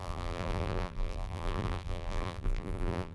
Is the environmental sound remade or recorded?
remade